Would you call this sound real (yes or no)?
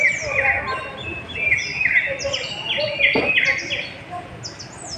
yes